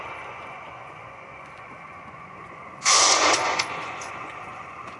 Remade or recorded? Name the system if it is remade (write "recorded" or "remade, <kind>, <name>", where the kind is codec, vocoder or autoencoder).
remade, vocoder, Vocos